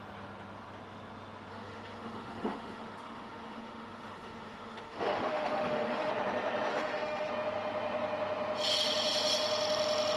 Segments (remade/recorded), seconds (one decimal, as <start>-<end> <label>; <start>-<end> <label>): 0.0-1.5 recorded; 1.5-6.1 remade; 6.1-6.7 recorded; 6.7-7.3 remade; 7.3-10.2 recorded

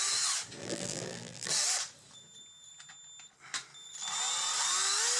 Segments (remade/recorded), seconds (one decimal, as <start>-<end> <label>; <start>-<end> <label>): 0.0-0.6 recorded; 0.6-1.5 remade; 1.5-5.2 recorded

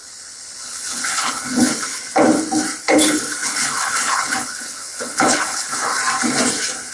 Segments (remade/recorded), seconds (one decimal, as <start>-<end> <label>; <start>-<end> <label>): 0.0-2.0 remade; 2.0-2.8 recorded; 2.8-6.0 remade; 6.0-6.9 recorded